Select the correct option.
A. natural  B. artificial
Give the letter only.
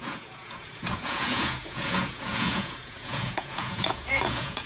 B